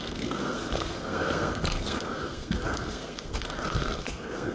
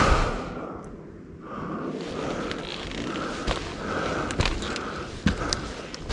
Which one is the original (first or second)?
second